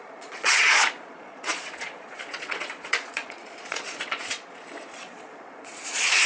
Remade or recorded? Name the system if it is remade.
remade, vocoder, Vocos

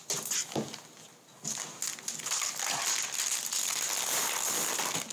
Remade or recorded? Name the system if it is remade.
recorded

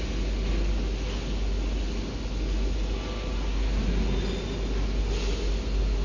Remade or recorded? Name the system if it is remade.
recorded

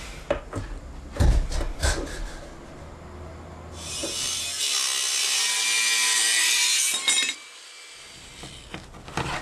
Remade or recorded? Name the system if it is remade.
recorded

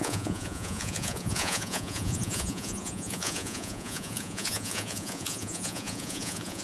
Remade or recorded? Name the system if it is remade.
remade, vocoder, Vocos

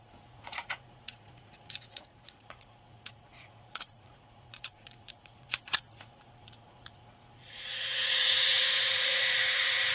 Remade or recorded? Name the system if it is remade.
remade, vocoder, Vocos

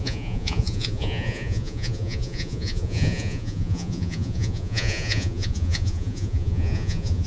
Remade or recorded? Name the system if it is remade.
remade, vocoder, Vocos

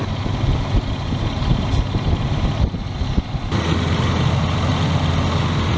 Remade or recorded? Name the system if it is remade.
recorded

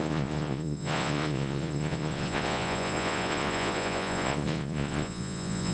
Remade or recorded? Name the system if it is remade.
remade, vocoder, Vocos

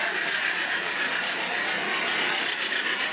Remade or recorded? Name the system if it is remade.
recorded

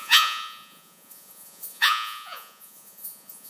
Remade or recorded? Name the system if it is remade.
remade, vocoder, Vocos